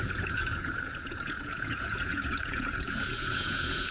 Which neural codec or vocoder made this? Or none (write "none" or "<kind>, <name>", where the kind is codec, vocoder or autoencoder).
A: vocoder, Vocos